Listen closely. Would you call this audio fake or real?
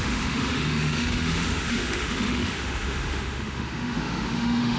fake